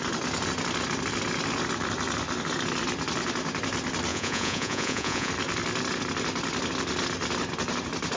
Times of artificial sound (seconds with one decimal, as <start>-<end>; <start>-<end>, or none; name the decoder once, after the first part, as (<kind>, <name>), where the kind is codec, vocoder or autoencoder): 4.1-5.3 (vocoder, Vocos)